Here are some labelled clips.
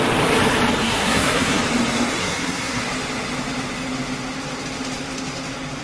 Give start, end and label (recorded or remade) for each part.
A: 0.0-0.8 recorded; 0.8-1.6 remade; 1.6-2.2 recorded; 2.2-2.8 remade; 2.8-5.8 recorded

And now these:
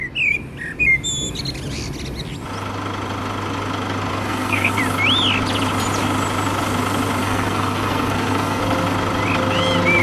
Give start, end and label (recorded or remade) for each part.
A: 0.0-4.1 recorded; 4.1-4.8 remade; 4.8-7.2 recorded; 7.2-8.6 remade; 8.6-10.0 recorded

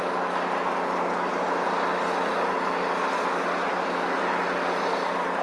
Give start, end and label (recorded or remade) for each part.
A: 0.0-5.4 recorded

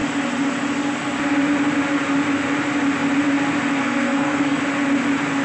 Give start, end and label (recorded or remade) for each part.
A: 0.0-3.8 recorded; 3.8-4.6 remade; 4.6-5.4 recorded

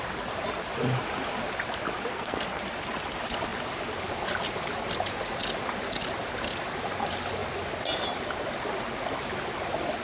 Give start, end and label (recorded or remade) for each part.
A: 0.0-2.1 recorded; 2.1-2.6 remade; 2.6-10.0 recorded

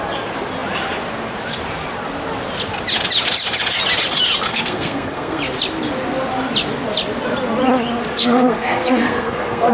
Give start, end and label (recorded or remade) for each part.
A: 0.0-4.5 recorded; 4.5-5.4 remade; 5.4-8.1 recorded; 8.1-9.7 remade